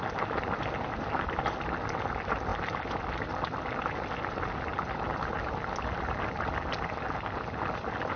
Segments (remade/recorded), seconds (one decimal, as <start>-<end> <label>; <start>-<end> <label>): 0.0-8.2 recorded